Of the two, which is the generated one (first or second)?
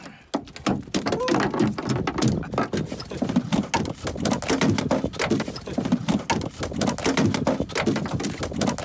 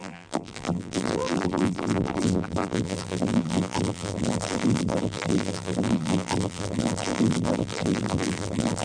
second